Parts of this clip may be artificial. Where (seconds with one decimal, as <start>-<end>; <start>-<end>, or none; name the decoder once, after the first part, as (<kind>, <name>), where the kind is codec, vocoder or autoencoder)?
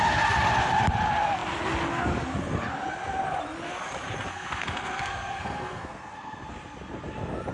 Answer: 4.3-6.5 (codec, SNAC)